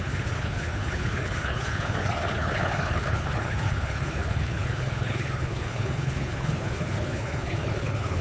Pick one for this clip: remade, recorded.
remade